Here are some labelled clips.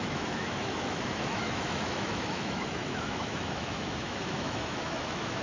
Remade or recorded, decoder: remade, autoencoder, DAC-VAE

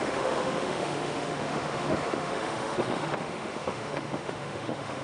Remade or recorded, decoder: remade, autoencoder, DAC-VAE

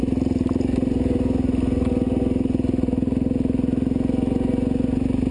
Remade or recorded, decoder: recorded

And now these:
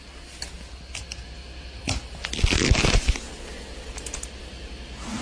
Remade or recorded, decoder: recorded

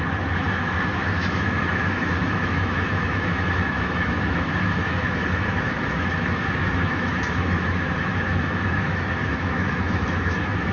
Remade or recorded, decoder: remade, autoencoder, DAC-VAE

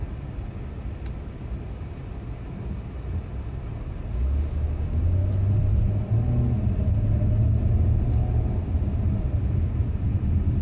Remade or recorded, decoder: recorded